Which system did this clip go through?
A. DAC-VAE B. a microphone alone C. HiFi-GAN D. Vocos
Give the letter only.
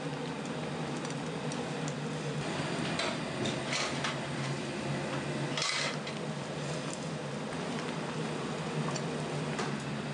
B